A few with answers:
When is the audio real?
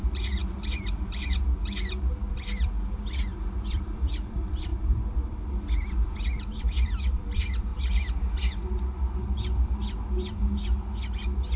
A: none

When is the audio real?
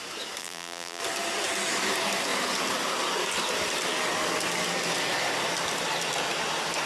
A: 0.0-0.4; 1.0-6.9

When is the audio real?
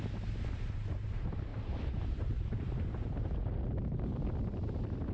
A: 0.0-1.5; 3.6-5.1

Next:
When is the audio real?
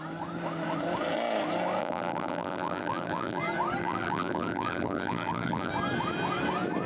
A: 0.0-1.8; 3.4-3.8; 5.7-6.9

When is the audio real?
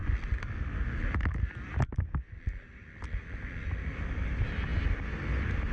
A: 0.0-5.7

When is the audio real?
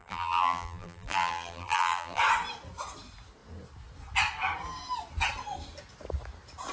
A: 2.2-6.7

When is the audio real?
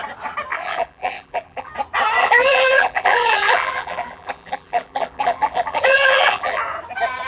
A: 0.0-0.5; 1.7-2.2; 6.6-7.3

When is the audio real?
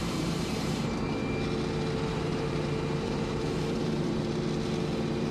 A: 0.9-2.1; 4.2-5.3